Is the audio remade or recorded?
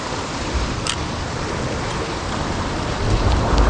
recorded